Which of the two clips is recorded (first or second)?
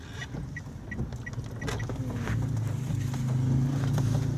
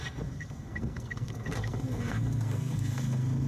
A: first